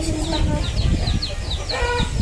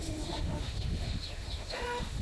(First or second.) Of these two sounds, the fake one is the second